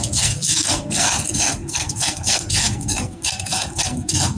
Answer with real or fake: fake